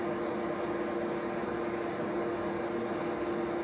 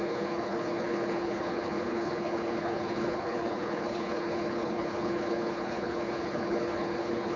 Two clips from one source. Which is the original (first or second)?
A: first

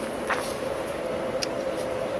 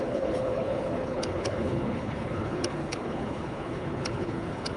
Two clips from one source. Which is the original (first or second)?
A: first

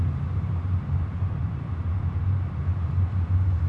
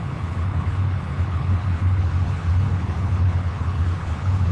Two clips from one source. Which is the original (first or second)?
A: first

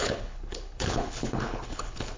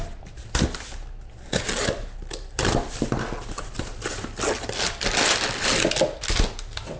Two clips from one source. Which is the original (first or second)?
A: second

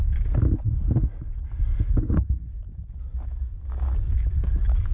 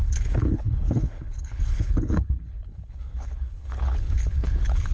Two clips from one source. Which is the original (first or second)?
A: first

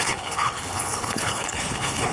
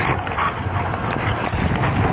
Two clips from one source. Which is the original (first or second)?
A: second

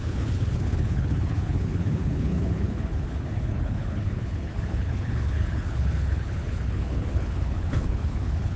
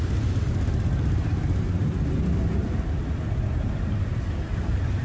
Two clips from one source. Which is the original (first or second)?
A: second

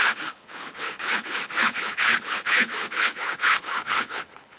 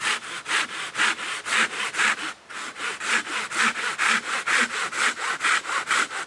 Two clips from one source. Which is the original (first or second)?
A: second